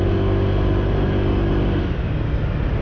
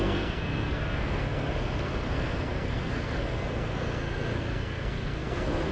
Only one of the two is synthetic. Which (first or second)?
second